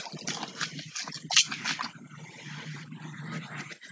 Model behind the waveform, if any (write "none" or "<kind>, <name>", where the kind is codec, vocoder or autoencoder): none